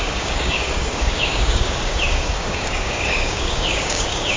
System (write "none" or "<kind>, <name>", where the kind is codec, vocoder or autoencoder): codec, DAC